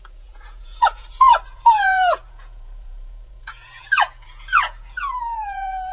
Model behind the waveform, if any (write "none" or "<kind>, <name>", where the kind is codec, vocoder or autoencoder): vocoder, Vocos